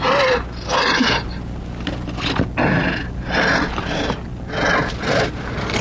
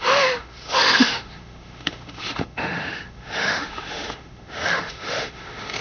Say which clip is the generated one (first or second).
second